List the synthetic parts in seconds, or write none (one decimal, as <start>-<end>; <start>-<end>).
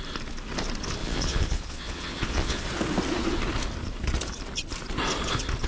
1.0-2.6